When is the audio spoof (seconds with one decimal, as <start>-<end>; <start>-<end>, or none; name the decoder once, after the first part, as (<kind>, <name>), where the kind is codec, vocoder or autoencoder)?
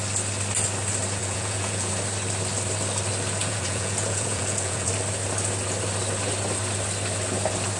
1.2-1.9 (vocoder, Vocos); 3.4-4.9